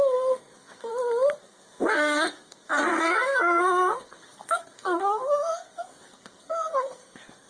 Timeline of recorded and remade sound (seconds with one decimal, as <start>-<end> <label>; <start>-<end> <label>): 0.0-0.9 remade; 0.9-1.4 recorded; 1.4-7.5 remade